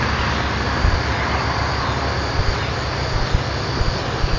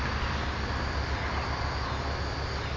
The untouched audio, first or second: second